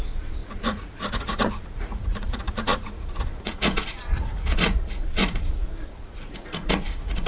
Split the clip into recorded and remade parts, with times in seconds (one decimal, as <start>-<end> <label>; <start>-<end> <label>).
0.0-7.3 remade